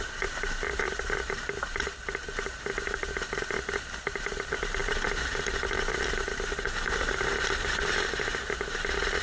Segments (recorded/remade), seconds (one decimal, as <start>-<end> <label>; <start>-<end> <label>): 0.0-9.2 remade